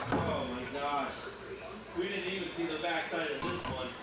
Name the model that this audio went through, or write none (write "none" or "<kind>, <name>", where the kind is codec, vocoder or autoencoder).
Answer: none